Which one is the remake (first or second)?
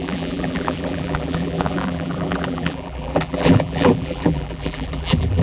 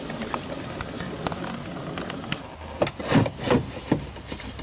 first